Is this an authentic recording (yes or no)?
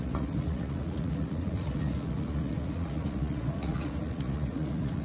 no